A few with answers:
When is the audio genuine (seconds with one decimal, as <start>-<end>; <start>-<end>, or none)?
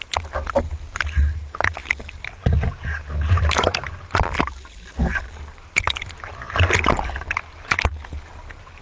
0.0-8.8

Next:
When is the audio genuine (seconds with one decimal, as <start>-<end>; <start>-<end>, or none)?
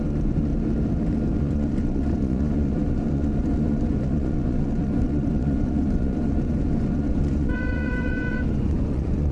0.5-1.4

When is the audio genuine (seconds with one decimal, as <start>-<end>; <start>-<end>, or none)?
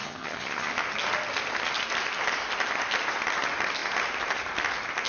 0.7-5.1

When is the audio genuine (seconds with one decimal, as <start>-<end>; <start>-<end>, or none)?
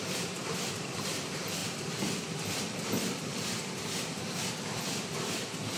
none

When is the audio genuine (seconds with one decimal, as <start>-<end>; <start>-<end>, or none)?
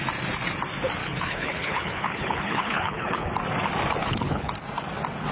0.0-1.0; 3.3-4.0; 4.5-5.3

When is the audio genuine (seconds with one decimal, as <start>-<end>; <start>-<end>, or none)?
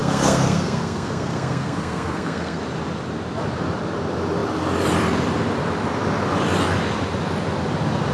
2.6-8.1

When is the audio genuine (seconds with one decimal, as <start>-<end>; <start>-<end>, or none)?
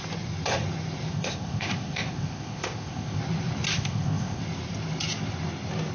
0.0-1.1; 3.2-3.7; 4.4-5.9